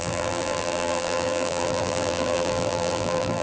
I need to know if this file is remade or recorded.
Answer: remade